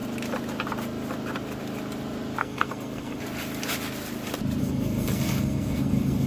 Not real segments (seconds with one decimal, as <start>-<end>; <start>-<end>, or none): 2.4-3.2; 4.6-6.3

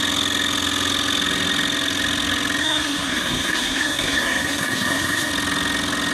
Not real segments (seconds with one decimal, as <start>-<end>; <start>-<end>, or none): 2.6-5.3

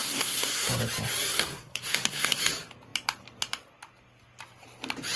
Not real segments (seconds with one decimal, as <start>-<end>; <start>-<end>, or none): 0.0-0.8; 1.3-2.4

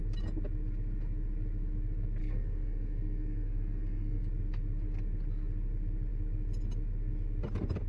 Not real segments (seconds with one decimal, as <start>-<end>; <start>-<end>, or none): 2.2-4.2

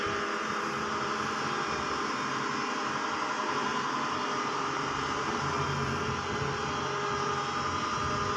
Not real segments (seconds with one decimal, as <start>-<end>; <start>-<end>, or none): none